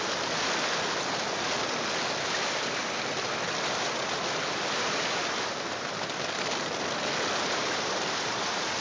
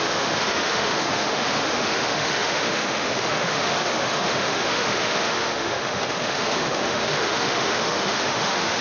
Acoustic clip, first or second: first